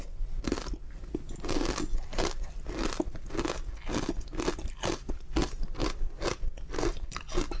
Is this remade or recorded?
recorded